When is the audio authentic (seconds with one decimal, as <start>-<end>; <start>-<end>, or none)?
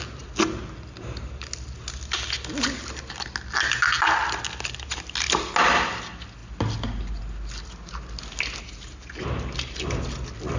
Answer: 0.0-10.6